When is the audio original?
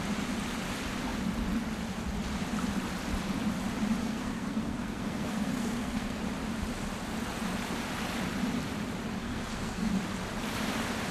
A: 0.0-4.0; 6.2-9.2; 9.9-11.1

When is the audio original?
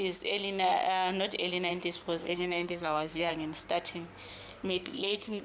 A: 0.0-2.2; 3.3-4.5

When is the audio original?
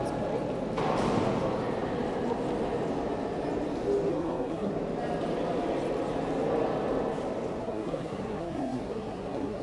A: 0.0-4.1; 4.7-7.6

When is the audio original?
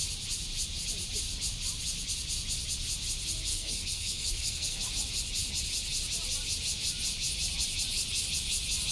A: 0.0-3.5; 4.9-8.9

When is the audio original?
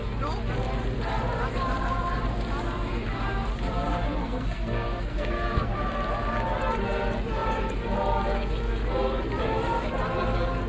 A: 0.0-4.2; 5.7-10.7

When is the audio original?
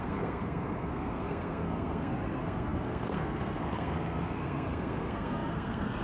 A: none